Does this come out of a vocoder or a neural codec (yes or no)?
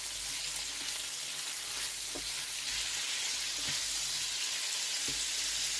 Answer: no